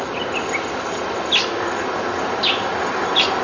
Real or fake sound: real